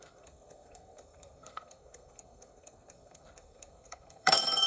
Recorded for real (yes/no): no